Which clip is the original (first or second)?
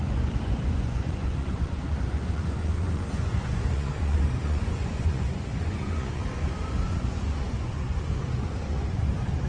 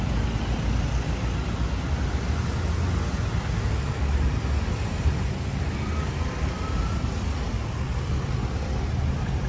second